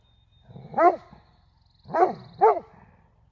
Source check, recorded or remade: recorded